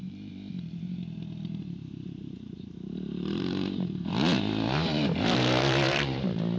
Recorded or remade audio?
remade